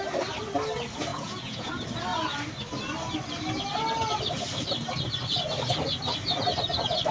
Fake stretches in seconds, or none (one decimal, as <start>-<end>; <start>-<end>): 1.1-1.7